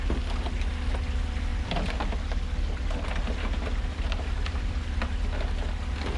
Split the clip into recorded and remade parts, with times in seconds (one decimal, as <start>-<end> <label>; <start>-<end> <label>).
0.0-1.5 recorded; 1.5-5.2 remade; 5.2-6.2 recorded